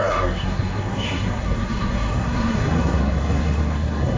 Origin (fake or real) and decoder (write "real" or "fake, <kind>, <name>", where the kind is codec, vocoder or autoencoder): fake, codec, SNAC